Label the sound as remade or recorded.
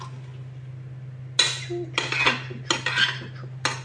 recorded